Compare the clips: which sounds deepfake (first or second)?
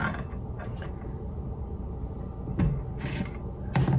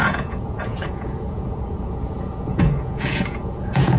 second